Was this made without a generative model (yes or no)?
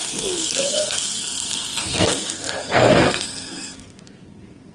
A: no